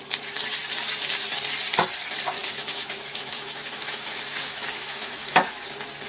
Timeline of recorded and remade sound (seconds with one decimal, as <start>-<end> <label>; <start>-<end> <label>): 0.0-2.4 recorded; 2.4-5.6 remade; 5.6-6.1 recorded